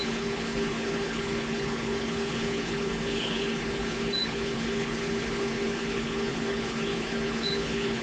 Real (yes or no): no